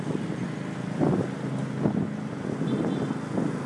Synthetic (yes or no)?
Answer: no